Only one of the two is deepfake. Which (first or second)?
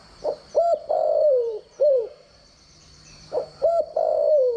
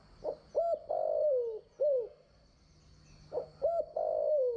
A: first